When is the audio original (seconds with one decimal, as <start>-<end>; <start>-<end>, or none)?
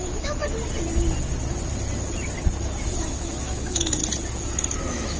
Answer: 0.4-3.0; 4.0-4.8